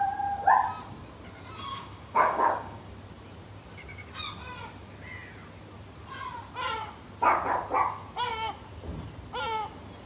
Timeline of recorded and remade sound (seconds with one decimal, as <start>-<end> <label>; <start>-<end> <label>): 0.0-1.7 recorded; 1.7-2.9 remade; 2.9-10.1 recorded

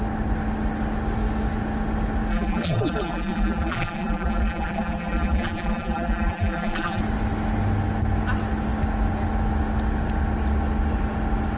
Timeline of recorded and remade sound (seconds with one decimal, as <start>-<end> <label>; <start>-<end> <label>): 0.0-2.3 recorded; 2.3-7.0 remade; 7.0-11.6 recorded

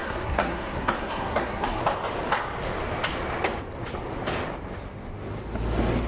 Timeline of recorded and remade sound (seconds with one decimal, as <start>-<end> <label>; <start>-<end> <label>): 0.0-1.8 remade; 1.8-6.1 recorded